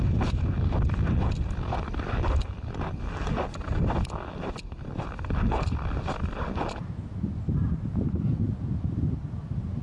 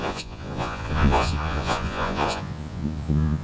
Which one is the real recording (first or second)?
first